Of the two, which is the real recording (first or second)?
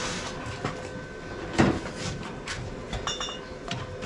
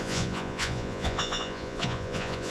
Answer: first